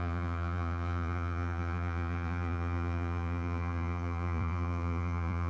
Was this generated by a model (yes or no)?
yes